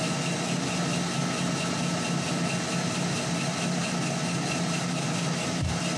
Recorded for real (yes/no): yes